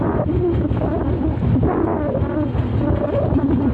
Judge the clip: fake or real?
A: real